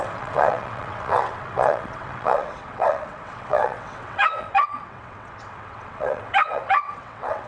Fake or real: fake